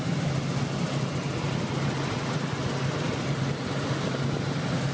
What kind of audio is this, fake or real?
real